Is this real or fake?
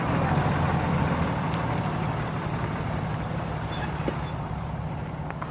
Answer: real